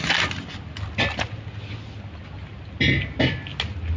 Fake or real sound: real